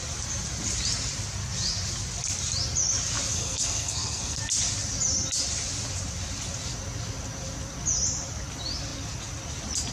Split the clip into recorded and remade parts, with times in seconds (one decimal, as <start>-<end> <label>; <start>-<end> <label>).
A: 0.0-3.3 recorded; 3.3-4.4 remade; 4.4-9.9 recorded